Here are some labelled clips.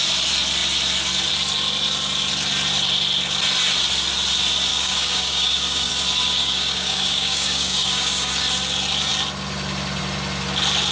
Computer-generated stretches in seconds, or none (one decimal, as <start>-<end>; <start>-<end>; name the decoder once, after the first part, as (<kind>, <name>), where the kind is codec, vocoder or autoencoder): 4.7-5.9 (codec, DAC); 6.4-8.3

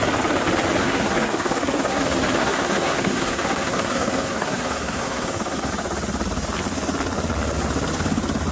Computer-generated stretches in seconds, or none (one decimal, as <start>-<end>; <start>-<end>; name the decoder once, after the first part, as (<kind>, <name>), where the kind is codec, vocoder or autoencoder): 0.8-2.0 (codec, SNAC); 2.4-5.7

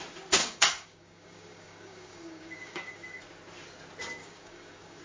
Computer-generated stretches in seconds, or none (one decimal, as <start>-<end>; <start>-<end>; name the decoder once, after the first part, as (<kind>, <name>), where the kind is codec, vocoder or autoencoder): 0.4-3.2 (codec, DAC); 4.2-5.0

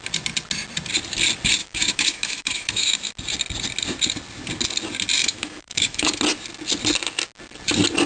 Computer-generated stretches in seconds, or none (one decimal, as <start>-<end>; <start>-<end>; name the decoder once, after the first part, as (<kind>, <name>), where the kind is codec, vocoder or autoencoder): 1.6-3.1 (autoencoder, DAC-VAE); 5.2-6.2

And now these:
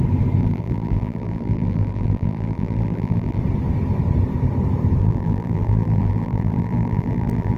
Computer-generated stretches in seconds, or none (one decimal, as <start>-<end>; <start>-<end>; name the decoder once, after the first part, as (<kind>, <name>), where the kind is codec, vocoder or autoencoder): 0.4-3.4 (vocoder, BigVGAN v2); 5.0-7.6